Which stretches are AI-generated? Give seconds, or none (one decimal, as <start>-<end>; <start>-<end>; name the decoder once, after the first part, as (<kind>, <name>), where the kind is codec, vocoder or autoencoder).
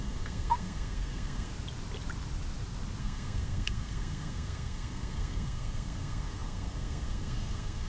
0.0-1.5 (codec, SNAC); 3.0-7.9